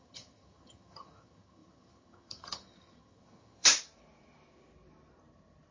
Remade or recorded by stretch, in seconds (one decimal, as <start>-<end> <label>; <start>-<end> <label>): 0.0-3.7 remade; 3.7-5.7 recorded